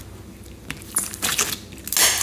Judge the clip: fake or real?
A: real